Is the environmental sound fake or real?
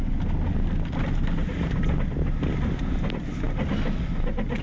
real